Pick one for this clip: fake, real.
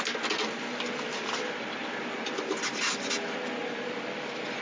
real